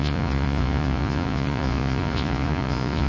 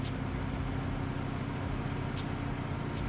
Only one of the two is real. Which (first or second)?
second